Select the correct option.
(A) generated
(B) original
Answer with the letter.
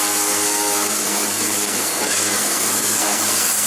A